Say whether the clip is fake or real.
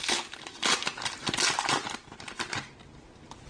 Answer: real